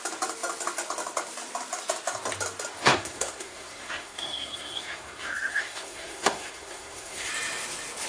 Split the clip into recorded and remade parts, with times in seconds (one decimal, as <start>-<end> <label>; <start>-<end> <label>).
0.0-2.8 recorded; 2.8-7.3 remade; 7.3-8.1 recorded